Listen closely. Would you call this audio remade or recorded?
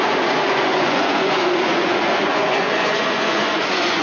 remade